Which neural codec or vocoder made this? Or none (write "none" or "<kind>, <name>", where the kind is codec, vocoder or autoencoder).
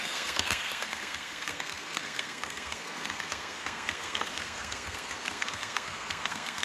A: codec, SNAC